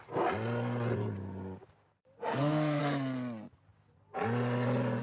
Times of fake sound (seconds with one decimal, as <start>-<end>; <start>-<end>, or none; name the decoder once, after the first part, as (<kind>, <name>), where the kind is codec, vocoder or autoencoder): 2.3-2.8 (codec, SNAC)